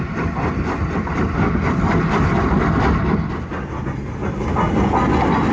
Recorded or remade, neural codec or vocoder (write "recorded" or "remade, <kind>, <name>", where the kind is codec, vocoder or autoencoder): recorded